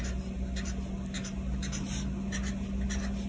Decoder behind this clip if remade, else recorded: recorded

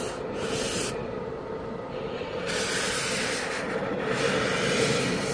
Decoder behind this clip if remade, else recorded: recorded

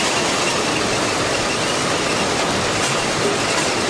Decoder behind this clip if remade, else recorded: recorded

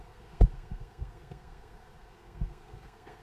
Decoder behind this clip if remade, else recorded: remade, codec, SNAC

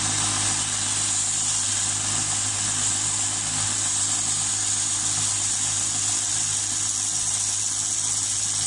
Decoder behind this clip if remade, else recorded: recorded